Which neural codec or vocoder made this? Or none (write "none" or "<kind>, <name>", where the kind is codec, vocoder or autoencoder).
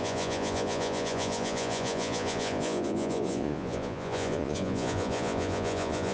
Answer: vocoder, Vocos